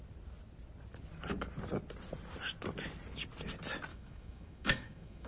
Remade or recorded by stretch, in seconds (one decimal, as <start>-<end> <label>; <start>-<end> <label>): 0.0-3.9 recorded; 3.9-5.3 remade